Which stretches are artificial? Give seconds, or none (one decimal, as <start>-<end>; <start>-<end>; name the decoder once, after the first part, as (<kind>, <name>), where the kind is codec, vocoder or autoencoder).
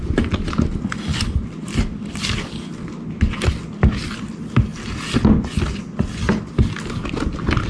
none